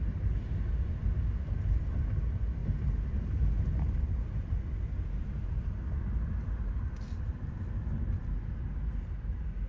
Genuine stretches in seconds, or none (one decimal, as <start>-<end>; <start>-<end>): 0.0-9.7